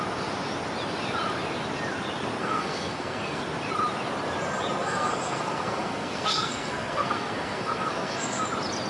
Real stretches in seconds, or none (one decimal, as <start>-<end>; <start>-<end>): 0.0-2.4; 3.4-4.8; 8.4-8.9

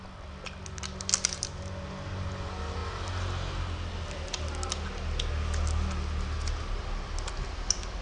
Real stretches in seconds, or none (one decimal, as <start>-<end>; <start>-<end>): 0.0-8.0

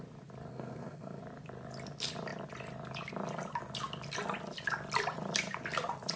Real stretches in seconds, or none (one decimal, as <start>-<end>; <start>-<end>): 0.0-0.5; 1.2-6.2

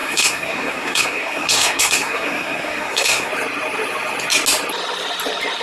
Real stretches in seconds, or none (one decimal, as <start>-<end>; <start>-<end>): 3.3-5.6

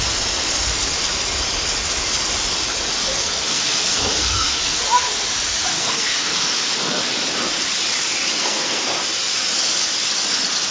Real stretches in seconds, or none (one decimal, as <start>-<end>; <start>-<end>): 0.0-3.0; 4.8-5.7; 7.0-8.4; 9.0-10.7

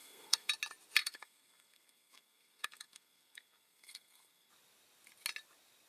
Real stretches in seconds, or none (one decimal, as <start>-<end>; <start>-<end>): 0.5-1.0; 4.5-5.9

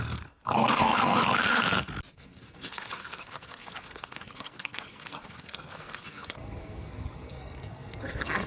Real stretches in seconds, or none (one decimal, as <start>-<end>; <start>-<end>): 1.2-2.1

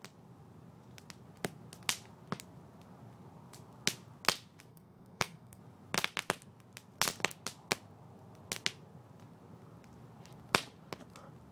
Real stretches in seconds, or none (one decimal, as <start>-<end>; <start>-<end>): 0.0-4.7; 5.6-11.5